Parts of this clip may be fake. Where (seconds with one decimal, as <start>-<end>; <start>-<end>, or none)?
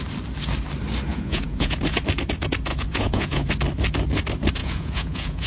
1.1-1.8; 2.7-3.5; 4.6-5.5